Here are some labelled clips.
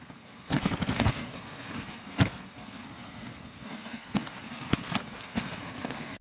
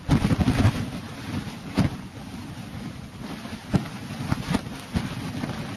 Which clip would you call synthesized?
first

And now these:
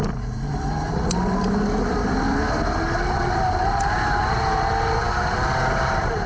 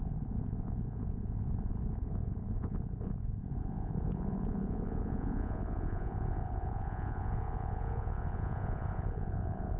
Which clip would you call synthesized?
second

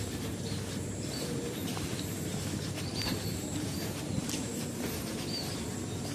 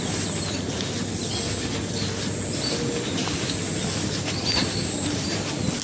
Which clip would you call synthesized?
first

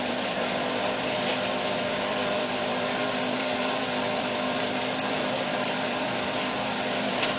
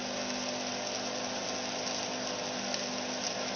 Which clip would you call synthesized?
first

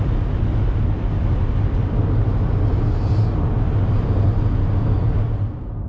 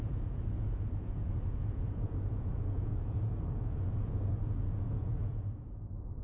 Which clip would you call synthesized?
second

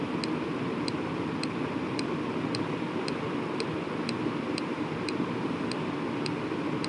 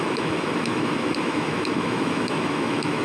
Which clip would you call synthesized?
second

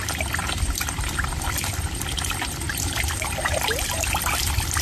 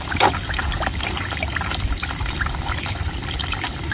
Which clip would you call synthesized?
second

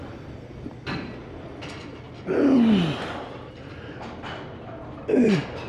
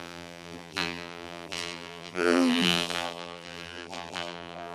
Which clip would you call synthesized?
second